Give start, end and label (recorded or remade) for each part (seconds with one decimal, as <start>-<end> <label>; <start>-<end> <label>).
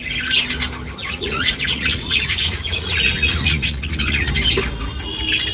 0.0-1.0 recorded; 1.0-4.3 remade; 4.3-5.5 recorded